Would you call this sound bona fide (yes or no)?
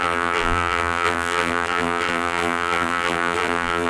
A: no